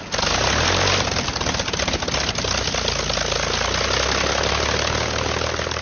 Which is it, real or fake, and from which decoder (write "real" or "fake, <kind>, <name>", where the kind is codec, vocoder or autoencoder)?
real